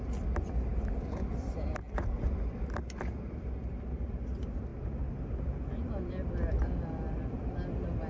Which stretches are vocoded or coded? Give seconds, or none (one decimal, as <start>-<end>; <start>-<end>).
none